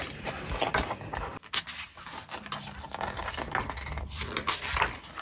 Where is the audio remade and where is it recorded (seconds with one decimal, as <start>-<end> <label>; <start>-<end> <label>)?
0.0-5.2 recorded